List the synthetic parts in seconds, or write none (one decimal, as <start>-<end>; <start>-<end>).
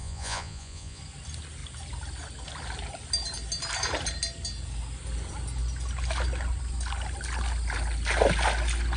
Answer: 0.0-1.0